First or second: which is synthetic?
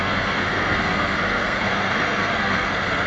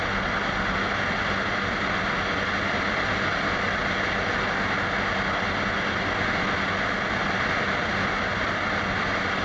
first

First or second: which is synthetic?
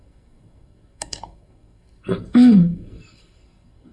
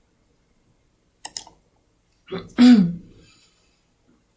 first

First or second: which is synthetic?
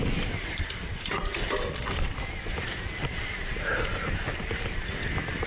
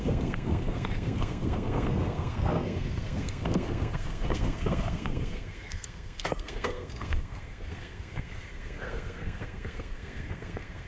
second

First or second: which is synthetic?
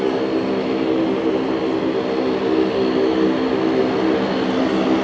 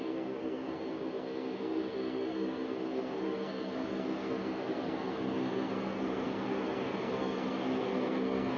second